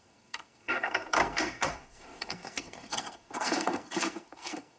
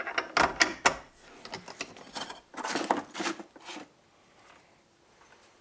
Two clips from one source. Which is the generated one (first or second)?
first